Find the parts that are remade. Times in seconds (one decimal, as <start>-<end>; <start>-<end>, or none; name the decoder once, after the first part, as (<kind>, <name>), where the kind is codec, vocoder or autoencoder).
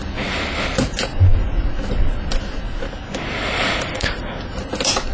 none